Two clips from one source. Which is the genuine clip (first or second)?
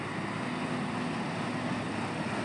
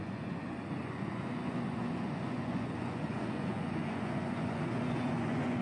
first